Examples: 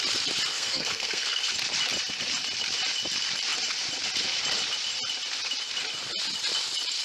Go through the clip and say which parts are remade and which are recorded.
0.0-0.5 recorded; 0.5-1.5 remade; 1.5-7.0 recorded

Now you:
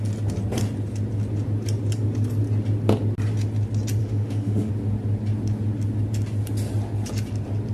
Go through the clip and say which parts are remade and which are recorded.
0.0-4.0 recorded; 4.0-4.7 remade; 4.7-7.7 recorded

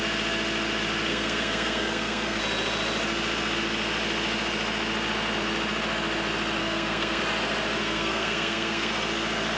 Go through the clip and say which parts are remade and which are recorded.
0.0-1.1 recorded; 1.1-2.4 remade; 2.4-6.6 recorded; 6.6-7.2 remade; 7.2-7.8 recorded; 7.8-8.9 remade; 8.9-9.6 recorded

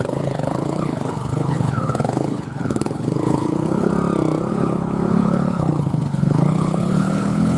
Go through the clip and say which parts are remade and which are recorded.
0.0-3.9 remade; 3.9-4.5 recorded; 4.5-7.6 remade

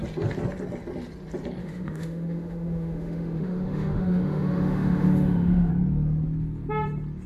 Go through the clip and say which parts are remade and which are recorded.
0.0-1.6 recorded; 1.6-5.7 remade; 5.7-7.3 recorded

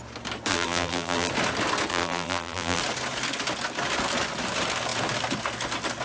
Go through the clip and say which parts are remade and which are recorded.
0.0-0.5 recorded; 0.5-1.3 remade; 1.3-1.9 recorded; 1.9-2.8 remade; 2.8-6.0 recorded